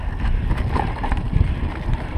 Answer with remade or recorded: recorded